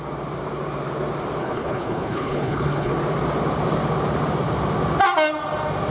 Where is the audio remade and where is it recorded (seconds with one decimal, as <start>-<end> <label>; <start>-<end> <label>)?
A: 0.0-1.4 recorded; 1.4-2.9 remade; 2.9-5.9 recorded